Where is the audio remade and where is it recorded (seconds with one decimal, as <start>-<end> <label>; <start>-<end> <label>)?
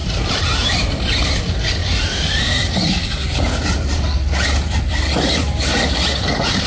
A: 0.0-0.7 remade; 0.7-1.8 recorded; 1.8-5.8 remade; 5.8-6.7 recorded